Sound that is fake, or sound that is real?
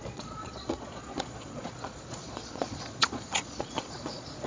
fake